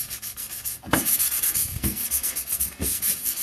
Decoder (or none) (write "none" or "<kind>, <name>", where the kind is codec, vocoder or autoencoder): codec, SNAC